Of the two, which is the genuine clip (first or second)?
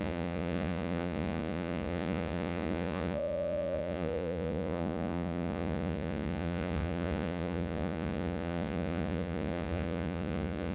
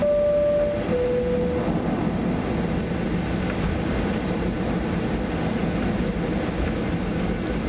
second